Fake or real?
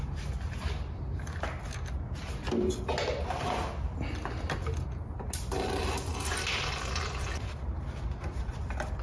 real